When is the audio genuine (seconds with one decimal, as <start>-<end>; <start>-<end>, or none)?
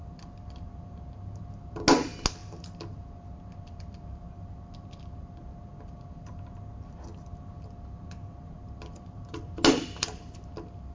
0.0-10.9